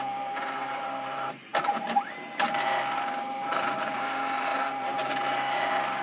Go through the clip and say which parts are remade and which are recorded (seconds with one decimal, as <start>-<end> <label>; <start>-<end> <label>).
0.0-1.5 remade; 1.5-3.5 recorded; 3.5-6.0 remade